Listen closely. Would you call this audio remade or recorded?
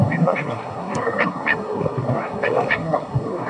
remade